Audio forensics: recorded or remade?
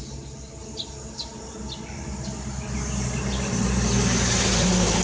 recorded